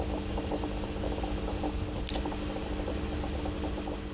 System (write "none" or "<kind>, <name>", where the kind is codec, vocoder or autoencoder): none